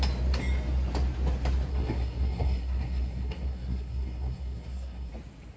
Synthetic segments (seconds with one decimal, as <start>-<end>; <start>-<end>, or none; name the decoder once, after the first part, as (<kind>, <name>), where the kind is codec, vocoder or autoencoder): 1.7-5.1 (codec, SNAC)